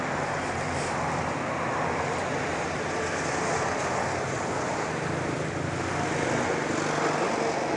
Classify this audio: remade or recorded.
recorded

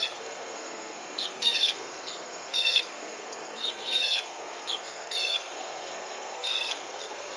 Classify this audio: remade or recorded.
remade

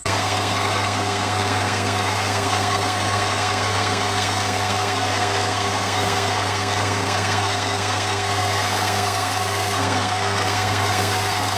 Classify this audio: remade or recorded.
remade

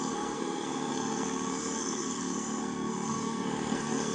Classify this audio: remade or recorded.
remade